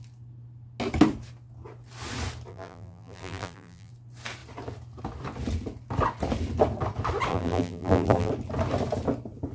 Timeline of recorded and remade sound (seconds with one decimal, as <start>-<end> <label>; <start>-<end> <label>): 0.0-2.5 recorded; 2.5-3.9 remade; 3.9-7.3 recorded; 7.3-8.3 remade; 8.3-9.5 recorded